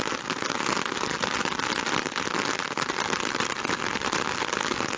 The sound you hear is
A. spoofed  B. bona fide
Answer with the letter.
B